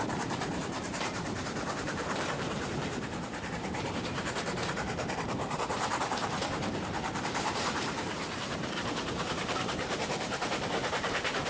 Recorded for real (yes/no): no